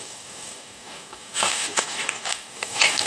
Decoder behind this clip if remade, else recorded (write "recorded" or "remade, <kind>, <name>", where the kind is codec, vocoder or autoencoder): remade, codec, DAC